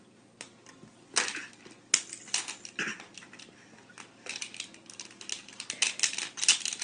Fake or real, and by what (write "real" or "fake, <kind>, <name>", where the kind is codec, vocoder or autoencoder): real